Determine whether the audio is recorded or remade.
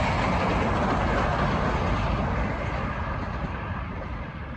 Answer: recorded